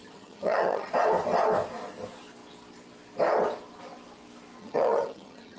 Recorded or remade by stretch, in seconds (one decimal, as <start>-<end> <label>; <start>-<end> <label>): 0.0-0.9 remade; 0.9-4.6 recorded; 4.6-5.6 remade